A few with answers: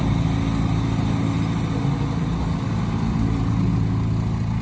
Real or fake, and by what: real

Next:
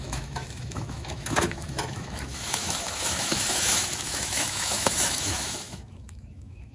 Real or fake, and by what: fake, autoencoder, DAC-VAE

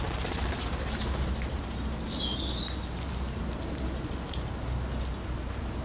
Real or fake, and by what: real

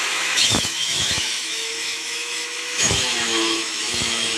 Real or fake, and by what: fake, autoencoder, DAC-VAE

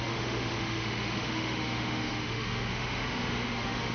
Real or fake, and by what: fake, autoencoder, DAC-VAE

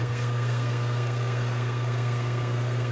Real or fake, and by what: fake, codec, SNAC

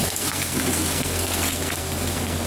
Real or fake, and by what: fake, codec, SNAC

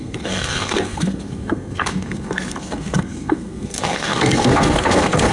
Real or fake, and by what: fake, codec, SNAC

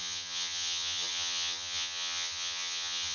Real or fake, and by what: fake, vocoder, HiFi-GAN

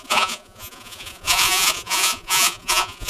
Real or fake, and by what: fake, vocoder, Vocos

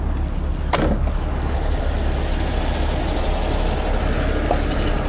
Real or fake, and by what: real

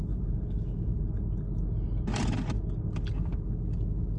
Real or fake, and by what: real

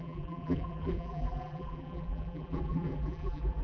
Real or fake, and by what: fake, vocoder, BigVGAN v2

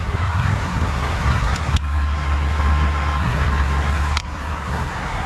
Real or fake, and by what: fake, codec, SNAC